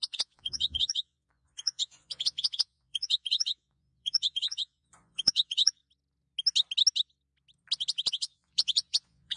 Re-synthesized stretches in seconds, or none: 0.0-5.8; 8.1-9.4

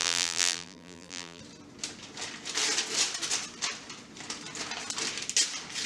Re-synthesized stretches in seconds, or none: 0.0-1.4